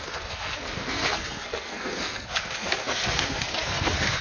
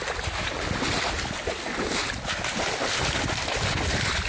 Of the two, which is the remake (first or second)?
first